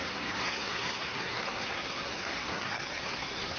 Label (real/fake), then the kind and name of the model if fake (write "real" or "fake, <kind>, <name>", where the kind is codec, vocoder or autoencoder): fake, codec, SNAC